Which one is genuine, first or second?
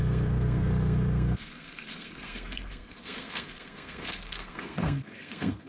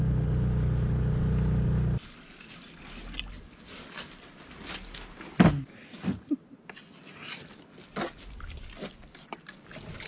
second